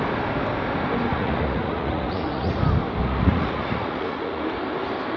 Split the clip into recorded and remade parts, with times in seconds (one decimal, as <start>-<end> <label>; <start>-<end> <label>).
0.0-1.1 recorded; 1.1-2.6 remade; 2.6-3.0 recorded; 3.0-4.4 remade; 4.4-5.2 recorded